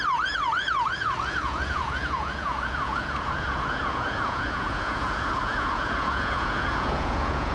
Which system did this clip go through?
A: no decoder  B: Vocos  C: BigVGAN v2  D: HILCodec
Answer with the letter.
B